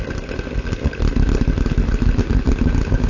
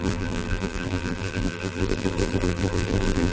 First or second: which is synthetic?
second